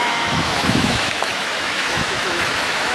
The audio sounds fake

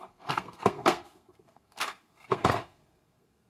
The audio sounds fake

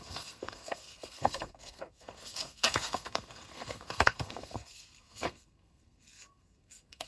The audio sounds fake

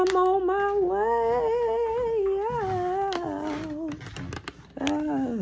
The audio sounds real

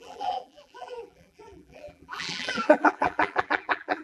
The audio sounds fake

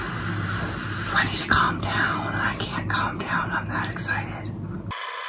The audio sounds real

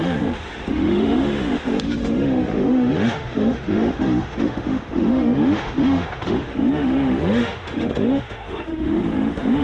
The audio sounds fake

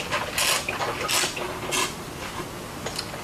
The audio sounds real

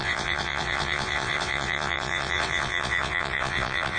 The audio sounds fake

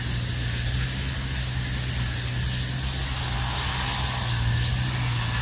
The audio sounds real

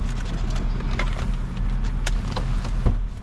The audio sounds real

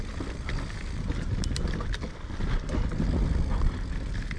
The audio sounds real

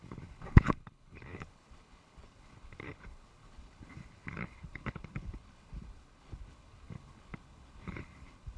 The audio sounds fake